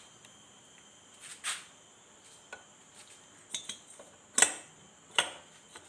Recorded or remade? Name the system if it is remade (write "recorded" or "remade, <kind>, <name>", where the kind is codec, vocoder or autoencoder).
recorded